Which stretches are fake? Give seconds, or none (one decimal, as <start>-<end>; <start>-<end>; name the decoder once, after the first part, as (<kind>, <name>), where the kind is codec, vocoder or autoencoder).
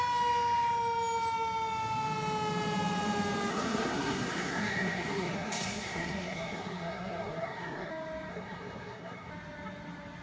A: 3.5-7.9 (codec, SNAC); 8.3-9.3